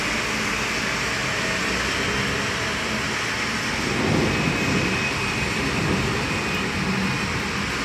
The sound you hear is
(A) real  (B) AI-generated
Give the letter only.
A